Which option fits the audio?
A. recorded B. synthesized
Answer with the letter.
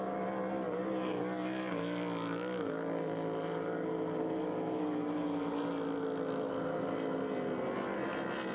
A